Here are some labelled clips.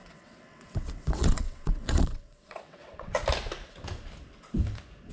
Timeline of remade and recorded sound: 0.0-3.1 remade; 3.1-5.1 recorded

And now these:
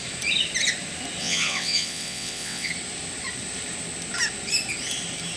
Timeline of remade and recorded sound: 0.0-1.2 recorded; 1.2-2.7 remade; 2.7-5.4 recorded

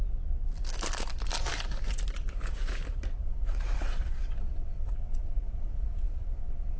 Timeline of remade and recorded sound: 0.0-3.2 recorded; 3.2-6.8 remade

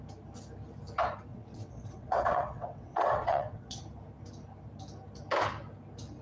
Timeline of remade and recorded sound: 0.0-1.3 recorded; 1.3-3.8 remade; 3.8-6.2 recorded

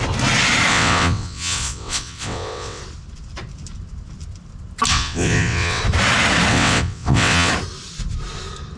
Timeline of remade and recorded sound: 0.0-0.7 recorded; 0.7-2.8 remade; 2.8-4.9 recorded; 4.9-5.8 remade; 5.8-6.5 recorded; 6.5-7.5 remade; 7.5-8.8 recorded

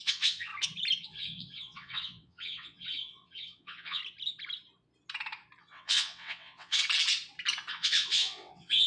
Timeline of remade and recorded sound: 0.0-0.5 remade; 0.5-1.0 recorded; 1.0-4.0 remade; 4.0-5.6 recorded; 5.6-6.8 remade; 6.8-7.7 recorded; 7.7-8.9 remade

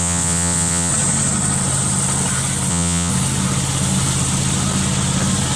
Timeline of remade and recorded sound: 0.0-0.9 remade; 0.9-2.7 recorded; 2.7-3.1 remade; 3.1-5.6 recorded